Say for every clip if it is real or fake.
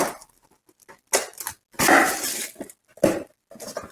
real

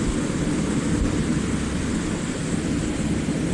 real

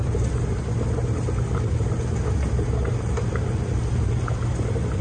real